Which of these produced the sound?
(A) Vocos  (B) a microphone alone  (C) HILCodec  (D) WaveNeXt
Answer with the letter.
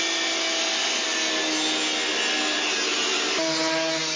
B